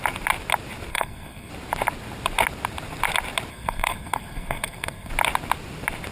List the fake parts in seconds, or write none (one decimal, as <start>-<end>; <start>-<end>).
0.9-1.5; 3.5-5.1